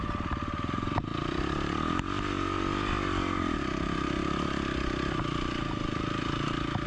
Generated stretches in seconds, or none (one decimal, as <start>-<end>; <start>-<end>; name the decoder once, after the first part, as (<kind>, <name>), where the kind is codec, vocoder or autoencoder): none